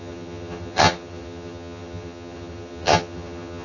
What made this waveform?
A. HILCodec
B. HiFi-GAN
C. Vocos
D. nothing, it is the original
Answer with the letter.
B